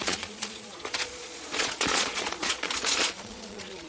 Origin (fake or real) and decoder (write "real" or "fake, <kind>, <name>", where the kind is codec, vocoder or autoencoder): fake, vocoder, Vocos